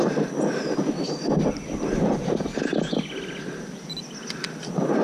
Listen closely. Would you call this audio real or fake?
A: real